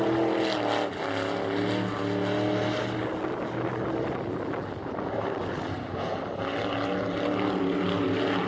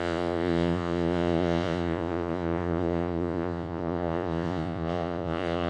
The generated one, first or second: second